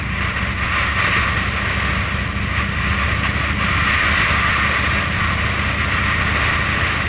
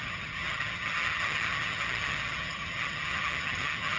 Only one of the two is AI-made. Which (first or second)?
second